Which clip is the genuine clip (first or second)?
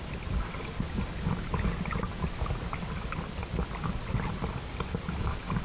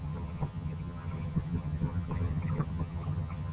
first